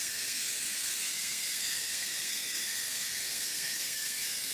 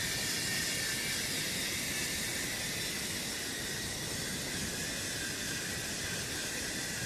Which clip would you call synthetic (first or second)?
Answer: first